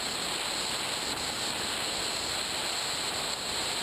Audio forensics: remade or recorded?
recorded